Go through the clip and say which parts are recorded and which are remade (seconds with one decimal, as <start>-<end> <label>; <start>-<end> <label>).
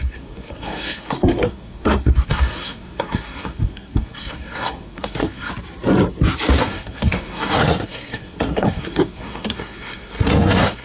0.0-5.5 remade; 5.5-6.6 recorded; 6.6-10.8 remade